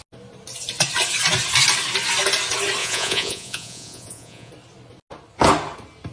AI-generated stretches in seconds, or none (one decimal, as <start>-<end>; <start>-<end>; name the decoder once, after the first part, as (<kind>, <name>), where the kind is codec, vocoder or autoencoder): 2.8-4.5 (vocoder, Vocos)